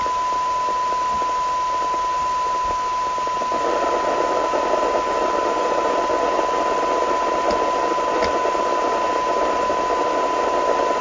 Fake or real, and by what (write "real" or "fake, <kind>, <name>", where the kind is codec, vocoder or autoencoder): real